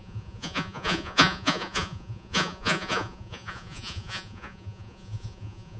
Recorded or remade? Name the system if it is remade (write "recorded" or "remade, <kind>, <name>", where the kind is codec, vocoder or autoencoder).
remade, vocoder, Vocos